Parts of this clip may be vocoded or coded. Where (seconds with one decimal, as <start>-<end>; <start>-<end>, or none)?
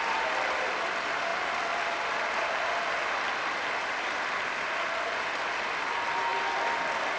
none